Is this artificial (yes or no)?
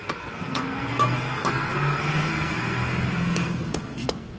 yes